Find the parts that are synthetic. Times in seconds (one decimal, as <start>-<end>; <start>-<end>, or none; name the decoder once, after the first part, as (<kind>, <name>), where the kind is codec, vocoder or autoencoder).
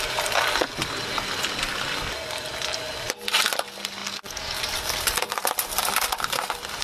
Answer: none